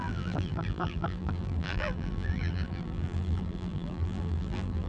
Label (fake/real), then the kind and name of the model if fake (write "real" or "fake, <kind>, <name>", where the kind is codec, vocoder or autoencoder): fake, vocoder, BigVGAN v2